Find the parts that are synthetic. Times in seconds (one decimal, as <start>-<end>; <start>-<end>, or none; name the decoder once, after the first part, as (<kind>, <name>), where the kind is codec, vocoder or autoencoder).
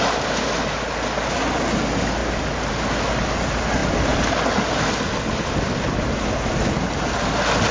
none